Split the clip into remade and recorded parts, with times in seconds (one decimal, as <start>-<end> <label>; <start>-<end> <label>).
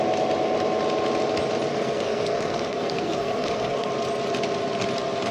0.0-1.7 recorded; 1.7-3.9 remade; 3.9-5.3 recorded